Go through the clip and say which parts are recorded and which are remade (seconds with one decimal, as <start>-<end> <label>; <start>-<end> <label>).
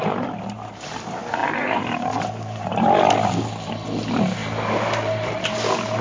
0.0-6.0 remade